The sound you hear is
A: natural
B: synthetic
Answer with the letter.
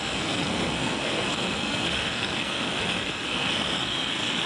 B